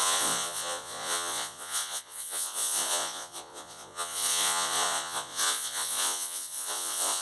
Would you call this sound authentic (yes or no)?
no